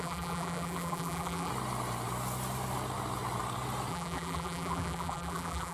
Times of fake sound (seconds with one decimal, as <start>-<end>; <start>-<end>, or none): 0.0-1.5; 3.9-5.7